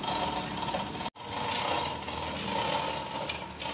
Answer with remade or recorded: recorded